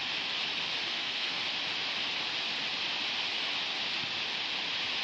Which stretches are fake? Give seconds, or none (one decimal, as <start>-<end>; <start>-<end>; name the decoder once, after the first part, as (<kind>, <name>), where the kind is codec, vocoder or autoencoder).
0.9-1.4 (codec, SNAC)